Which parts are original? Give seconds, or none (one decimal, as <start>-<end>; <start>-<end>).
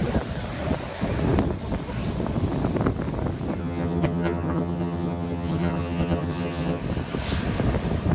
0.0-3.6; 6.8-8.1